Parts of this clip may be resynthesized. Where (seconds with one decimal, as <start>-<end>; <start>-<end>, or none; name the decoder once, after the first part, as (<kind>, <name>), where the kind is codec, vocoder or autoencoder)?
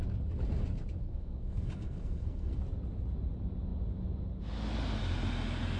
1.0-2.6 (codec, SNAC)